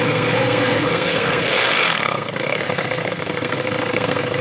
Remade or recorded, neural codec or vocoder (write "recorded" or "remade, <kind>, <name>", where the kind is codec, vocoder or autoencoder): remade, codec, SNAC